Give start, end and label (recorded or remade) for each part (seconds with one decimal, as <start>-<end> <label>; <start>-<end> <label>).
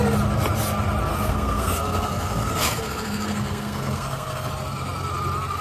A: 0.0-1.1 recorded; 1.1-4.5 remade; 4.5-5.6 recorded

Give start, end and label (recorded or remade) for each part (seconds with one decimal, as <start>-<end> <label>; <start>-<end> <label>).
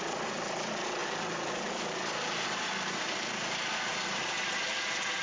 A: 0.0-5.2 recorded